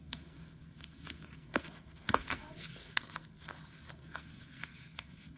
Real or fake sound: fake